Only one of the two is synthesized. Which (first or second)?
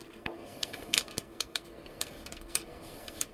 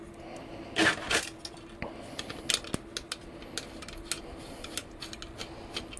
first